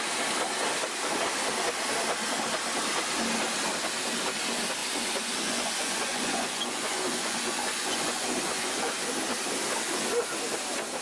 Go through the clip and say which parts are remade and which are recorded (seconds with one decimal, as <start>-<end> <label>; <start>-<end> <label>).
0.0-4.8 recorded; 4.8-8.9 remade; 8.9-11.0 recorded